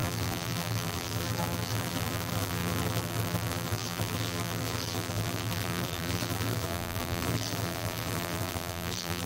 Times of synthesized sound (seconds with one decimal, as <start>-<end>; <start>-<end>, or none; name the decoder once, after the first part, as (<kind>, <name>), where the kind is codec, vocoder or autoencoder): 0.0-9.3 (vocoder, BigVGAN v2)